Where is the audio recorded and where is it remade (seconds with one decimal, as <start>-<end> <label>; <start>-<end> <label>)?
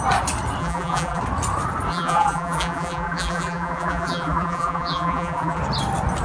0.0-0.6 recorded; 0.6-1.2 remade; 1.2-1.9 recorded; 1.9-5.6 remade; 5.6-6.2 recorded